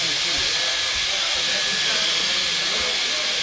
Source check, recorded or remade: recorded